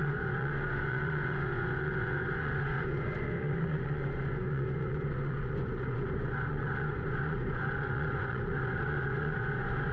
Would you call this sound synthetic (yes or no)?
yes